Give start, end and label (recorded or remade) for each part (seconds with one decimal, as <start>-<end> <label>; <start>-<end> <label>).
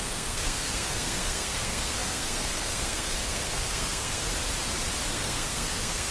0.0-4.3 remade; 4.3-5.1 recorded; 5.1-6.1 remade